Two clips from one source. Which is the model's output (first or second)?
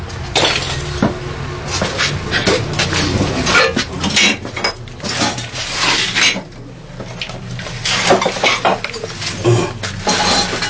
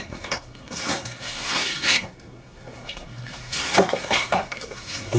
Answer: second